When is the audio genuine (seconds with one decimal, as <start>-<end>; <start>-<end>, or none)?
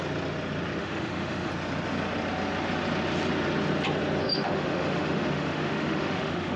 0.0-0.8; 1.5-4.2